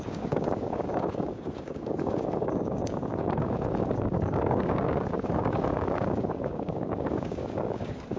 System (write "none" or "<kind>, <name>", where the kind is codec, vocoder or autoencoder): codec, DAC